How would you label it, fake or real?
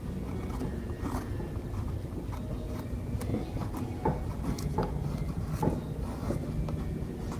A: real